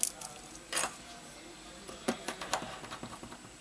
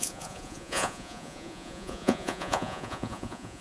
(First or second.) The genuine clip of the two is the first